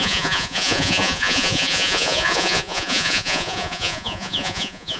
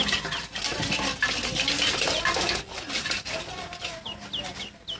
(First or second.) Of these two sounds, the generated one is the first